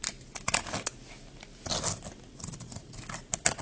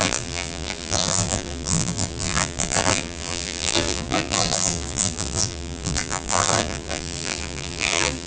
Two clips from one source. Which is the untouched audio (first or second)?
first